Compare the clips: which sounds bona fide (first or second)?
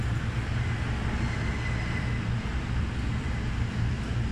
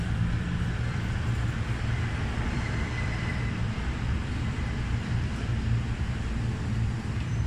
first